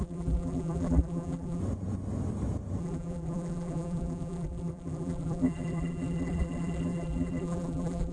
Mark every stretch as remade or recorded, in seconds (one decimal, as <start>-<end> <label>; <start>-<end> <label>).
0.0-1.6 remade; 1.6-2.8 recorded; 2.8-8.1 remade